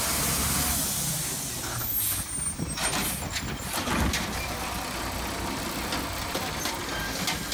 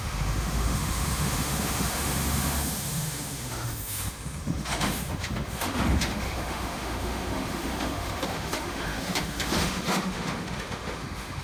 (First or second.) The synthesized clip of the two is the second